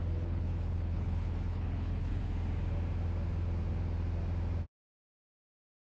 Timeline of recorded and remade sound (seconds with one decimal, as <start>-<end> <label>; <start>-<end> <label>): 0.0-2.2 remade; 2.2-6.0 recorded

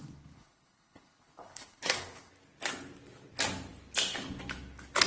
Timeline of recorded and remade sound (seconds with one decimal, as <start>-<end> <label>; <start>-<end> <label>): 0.0-2.3 remade; 2.3-5.1 recorded

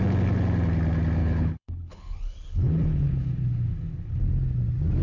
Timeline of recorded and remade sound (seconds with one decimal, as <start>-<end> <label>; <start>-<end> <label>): 0.0-1.2 recorded; 1.2-4.2 remade; 4.2-5.0 recorded

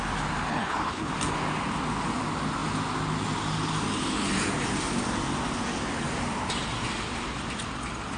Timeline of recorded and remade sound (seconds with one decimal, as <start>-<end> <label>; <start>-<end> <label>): 0.0-0.5 recorded; 0.5-1.1 remade; 1.1-8.2 recorded